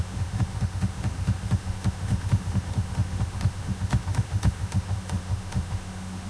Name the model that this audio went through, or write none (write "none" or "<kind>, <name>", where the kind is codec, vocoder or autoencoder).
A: autoencoder, DAC-VAE